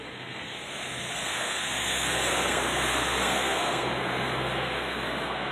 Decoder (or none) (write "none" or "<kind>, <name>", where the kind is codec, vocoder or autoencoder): codec, SNAC